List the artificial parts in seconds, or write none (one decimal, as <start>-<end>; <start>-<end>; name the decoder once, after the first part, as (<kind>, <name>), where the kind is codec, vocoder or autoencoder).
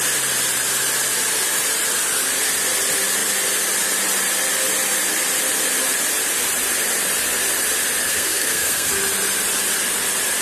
8.1-8.9 (codec, SNAC)